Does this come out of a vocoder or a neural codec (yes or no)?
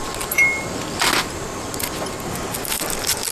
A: no